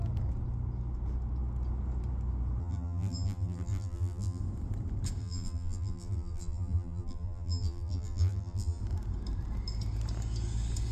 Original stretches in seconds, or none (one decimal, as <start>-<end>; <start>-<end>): 0.0-2.6; 4.4-5.2; 8.8-10.9